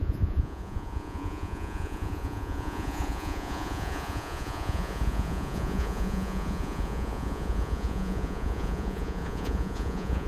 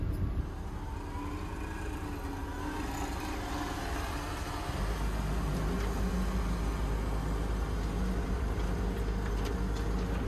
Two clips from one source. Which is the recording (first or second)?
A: second